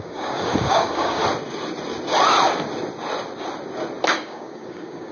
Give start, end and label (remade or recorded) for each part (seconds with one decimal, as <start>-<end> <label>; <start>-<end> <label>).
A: 0.0-1.2 remade; 1.2-4.1 recorded; 4.1-5.1 remade